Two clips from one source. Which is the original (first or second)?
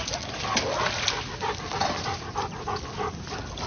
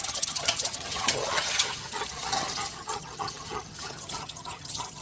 first